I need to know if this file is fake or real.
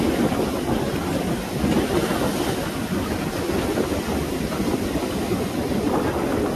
real